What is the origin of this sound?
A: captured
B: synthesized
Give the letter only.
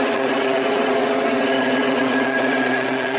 B